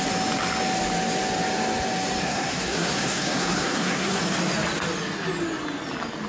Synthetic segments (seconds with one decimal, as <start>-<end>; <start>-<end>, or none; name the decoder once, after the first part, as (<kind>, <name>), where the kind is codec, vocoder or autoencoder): 2.2-4.2 (codec, SNAC)